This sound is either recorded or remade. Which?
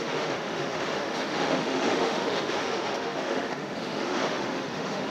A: remade